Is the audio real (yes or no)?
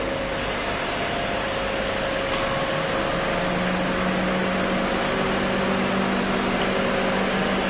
yes